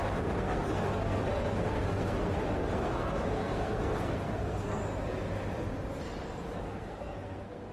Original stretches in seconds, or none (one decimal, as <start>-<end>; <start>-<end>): 4.8-6.6